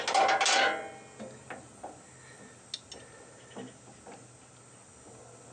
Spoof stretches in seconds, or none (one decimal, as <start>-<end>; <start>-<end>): none